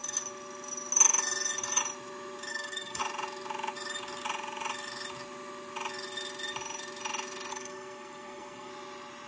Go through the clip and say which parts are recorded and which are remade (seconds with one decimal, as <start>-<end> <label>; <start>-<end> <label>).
0.0-2.5 recorded; 2.5-3.0 remade; 3.0-7.5 recorded; 7.5-8.7 remade; 8.7-9.3 recorded